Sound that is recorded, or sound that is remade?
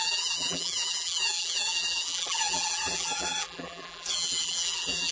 remade